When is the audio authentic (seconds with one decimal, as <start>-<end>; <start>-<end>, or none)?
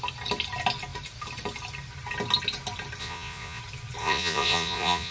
0.0-3.0; 3.6-4.0